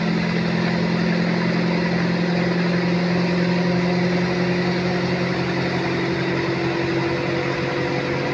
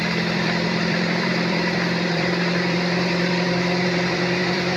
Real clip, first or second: first